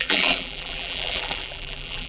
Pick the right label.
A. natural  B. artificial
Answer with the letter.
B